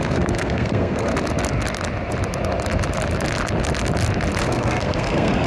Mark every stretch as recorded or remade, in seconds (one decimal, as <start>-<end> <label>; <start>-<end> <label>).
0.0-1.1 remade; 1.1-4.4 recorded; 4.4-5.5 remade